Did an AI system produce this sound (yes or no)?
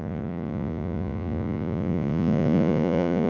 yes